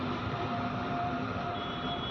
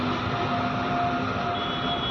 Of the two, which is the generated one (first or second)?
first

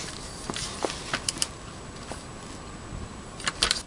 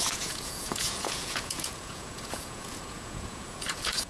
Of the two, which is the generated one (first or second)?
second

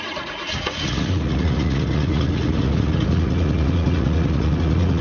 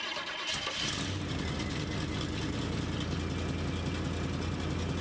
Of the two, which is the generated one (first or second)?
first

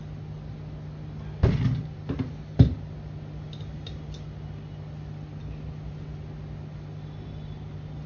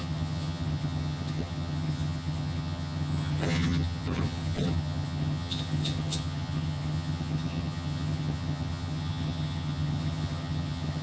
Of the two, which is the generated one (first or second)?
second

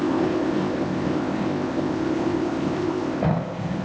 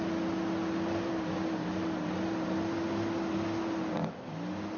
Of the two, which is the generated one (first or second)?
first